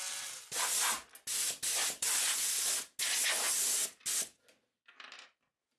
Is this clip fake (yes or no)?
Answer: no